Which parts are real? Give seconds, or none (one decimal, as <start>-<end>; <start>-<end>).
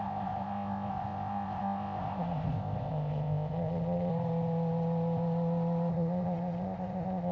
4.1-5.9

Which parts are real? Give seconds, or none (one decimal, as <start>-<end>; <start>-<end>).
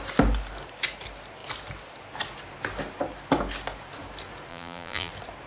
0.0-4.5; 5.1-5.5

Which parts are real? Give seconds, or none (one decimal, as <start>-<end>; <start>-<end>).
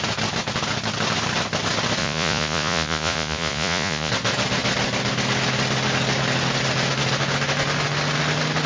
0.0-2.0; 4.1-8.7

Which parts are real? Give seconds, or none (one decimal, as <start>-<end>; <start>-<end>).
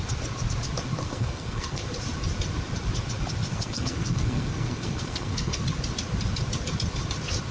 0.0-1.0; 1.8-3.5; 5.6-7.5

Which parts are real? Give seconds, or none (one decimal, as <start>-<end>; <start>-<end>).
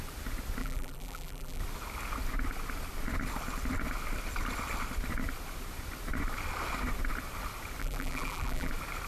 0.0-0.6; 1.6-7.8; 8.7-9.1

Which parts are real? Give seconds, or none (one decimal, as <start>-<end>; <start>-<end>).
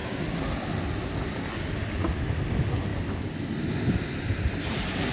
0.0-1.6; 2.9-4.3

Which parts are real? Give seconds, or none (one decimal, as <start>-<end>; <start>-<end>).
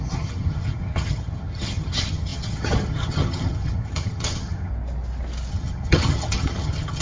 4.7-5.5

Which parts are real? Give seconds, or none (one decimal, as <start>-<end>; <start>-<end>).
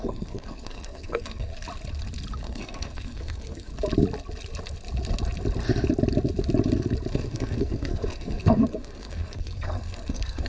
1.5-2.4; 3.7-7.1